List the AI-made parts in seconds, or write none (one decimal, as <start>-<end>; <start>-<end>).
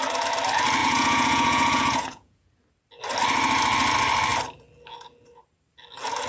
0.8-2.5